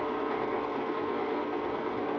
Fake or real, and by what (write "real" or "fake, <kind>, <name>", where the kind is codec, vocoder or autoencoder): fake, codec, SNAC